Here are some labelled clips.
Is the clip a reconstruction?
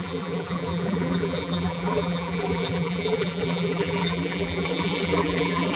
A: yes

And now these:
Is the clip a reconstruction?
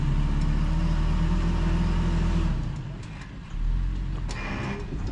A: no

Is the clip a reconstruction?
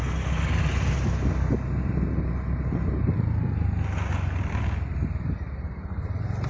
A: no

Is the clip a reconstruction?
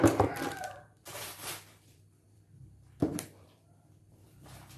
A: yes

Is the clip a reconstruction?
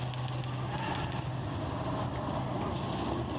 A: no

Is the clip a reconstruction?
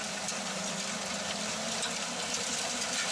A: no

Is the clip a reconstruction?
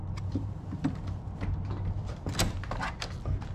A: no